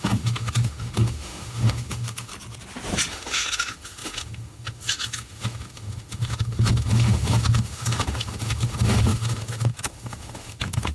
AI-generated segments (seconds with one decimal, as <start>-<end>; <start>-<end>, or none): 0.0-2.3; 3.1-10.9